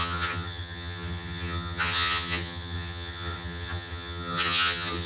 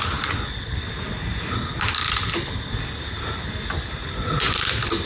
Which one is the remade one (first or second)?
first